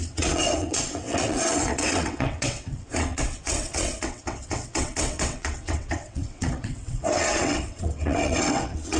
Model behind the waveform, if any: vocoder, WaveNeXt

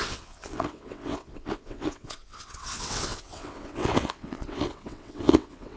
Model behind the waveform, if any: vocoder, WaveNeXt